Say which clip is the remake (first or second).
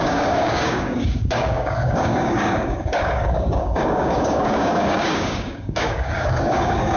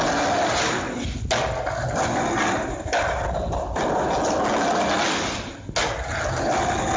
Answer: first